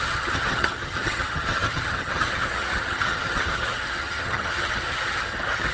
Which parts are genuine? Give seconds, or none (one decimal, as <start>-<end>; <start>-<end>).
none